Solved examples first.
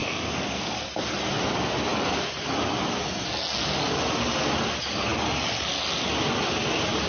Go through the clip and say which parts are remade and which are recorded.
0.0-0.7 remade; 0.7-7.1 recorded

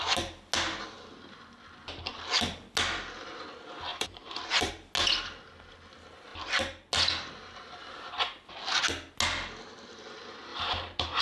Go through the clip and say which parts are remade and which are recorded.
0.0-3.9 recorded; 3.9-4.7 remade; 4.7-10.5 recorded; 10.5-11.2 remade